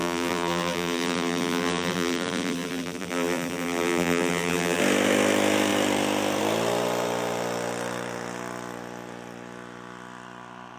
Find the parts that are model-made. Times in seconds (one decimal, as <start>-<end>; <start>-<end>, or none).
0.0-4.8